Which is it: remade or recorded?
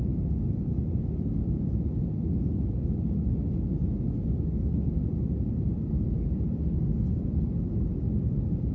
recorded